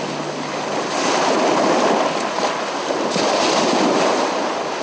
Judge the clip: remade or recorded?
recorded